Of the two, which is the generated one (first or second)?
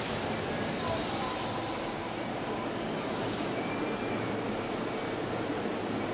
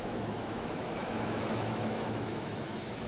second